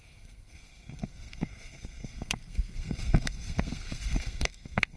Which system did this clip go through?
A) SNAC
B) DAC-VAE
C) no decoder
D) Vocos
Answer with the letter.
A